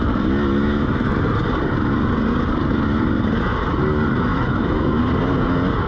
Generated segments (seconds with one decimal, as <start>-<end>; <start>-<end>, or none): 0.6-1.2; 4.3-5.0